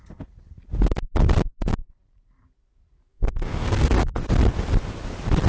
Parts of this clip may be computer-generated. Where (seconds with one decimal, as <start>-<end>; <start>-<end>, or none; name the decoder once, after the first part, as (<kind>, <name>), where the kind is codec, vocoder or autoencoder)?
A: 3.1-4.2 (codec, SNAC)